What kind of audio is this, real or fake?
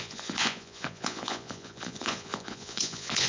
fake